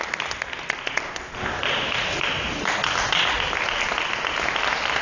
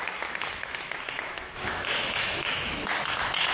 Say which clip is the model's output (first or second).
second